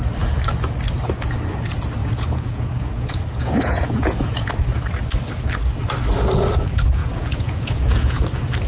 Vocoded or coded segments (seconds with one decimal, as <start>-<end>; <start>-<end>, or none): 2.0-4.5; 7.0-8.2